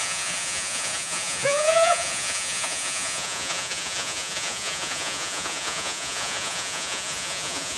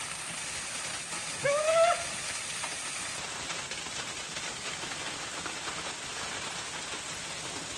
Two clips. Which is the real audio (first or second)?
second